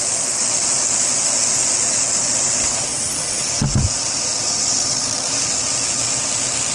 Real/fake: fake